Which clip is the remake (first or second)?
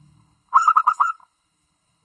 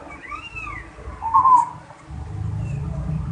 first